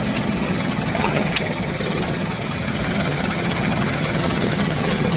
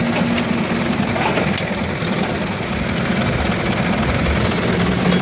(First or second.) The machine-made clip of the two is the first